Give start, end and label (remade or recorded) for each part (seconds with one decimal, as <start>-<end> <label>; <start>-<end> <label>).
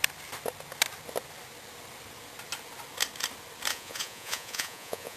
0.0-3.7 recorded; 3.7-5.2 remade